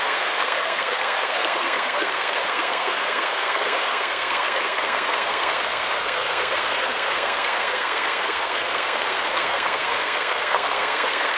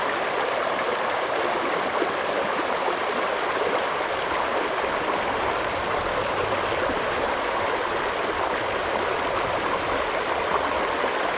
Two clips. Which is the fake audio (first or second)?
first